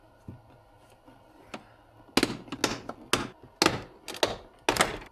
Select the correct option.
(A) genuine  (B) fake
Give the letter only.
A